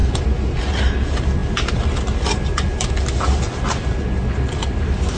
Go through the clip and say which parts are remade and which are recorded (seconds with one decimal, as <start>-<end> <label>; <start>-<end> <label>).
0.0-5.2 recorded